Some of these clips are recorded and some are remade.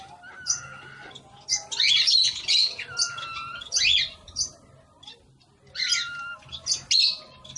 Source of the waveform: recorded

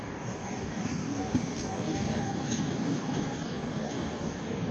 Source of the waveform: remade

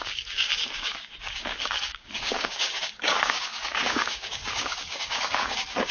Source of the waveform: remade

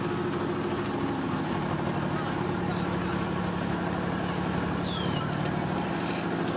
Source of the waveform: recorded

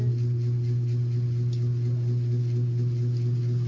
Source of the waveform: recorded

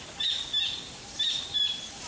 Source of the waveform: recorded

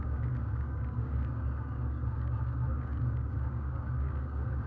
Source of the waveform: remade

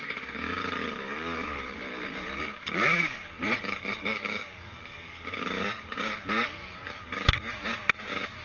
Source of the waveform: remade